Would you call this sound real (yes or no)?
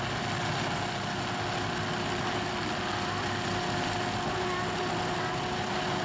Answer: yes